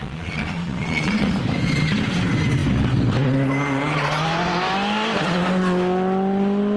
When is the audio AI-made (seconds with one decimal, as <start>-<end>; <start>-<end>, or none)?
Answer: 0.0-1.3